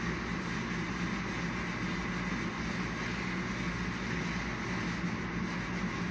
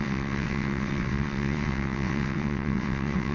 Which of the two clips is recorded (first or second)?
first